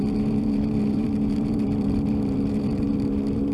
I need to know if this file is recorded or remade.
remade